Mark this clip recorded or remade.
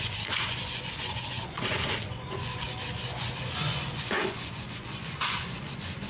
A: remade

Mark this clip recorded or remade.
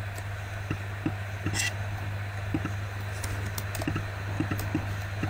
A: recorded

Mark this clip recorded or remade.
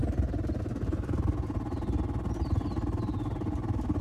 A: recorded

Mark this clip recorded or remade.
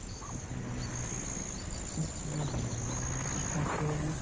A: recorded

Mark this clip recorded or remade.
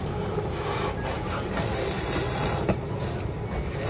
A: recorded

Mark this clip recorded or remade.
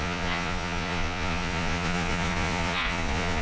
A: remade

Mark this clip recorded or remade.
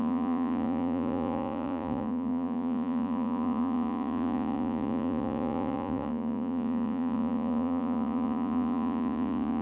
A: remade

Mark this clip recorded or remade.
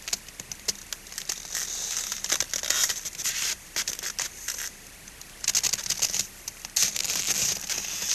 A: recorded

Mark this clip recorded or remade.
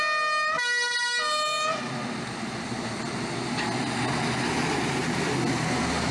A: recorded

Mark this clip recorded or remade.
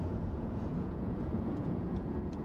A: remade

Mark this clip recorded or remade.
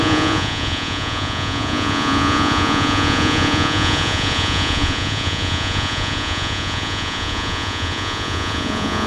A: remade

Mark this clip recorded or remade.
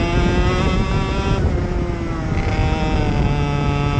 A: recorded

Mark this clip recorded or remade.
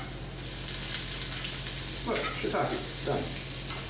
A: recorded